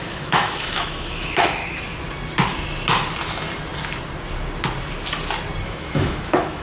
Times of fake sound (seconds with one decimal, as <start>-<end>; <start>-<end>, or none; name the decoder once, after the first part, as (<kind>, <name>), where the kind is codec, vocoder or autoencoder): 0.0-1.6 (autoencoder, DAC-VAE); 5.6-6.6